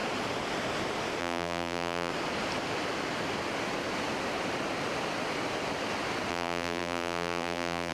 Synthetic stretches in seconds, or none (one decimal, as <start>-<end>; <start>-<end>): 1.2-2.1; 6.3-7.9